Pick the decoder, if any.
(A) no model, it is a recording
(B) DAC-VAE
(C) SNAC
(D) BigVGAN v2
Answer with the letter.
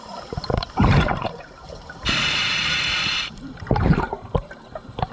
D